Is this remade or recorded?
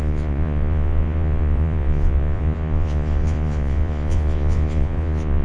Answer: remade